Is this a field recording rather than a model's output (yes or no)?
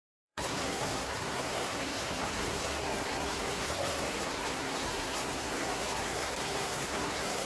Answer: no